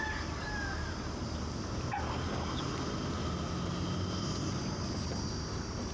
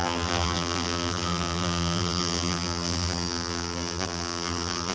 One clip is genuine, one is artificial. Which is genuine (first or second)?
first